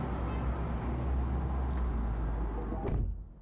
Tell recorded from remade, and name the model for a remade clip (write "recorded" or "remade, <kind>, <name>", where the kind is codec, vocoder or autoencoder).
recorded